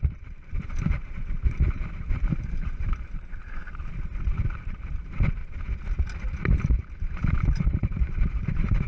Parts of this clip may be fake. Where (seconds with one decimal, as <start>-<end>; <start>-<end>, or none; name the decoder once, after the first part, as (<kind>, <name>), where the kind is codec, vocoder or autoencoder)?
0.0-3.6 (vocoder, BigVGAN v2); 4.4-5.4; 7.0-8.9